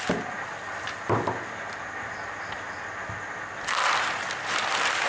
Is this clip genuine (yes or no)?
yes